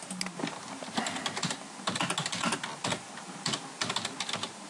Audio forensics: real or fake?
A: real